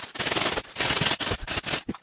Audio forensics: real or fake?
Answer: real